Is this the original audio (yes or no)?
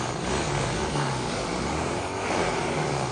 no